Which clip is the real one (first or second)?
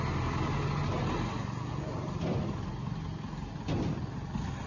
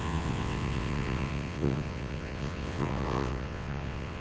first